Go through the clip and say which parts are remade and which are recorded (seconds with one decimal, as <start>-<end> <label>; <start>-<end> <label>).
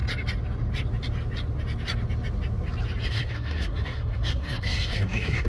0.0-3.1 recorded; 3.1-5.5 remade